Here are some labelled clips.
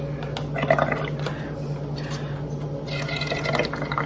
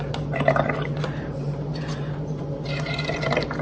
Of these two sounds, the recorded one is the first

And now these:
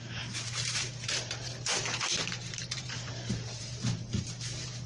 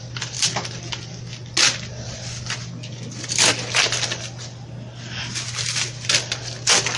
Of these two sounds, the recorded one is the second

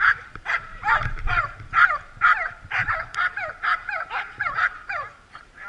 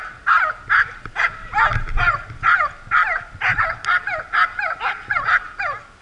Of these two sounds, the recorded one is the second